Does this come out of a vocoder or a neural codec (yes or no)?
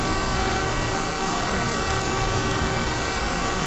yes